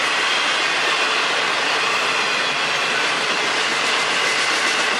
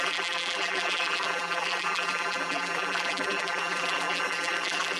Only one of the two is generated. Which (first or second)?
second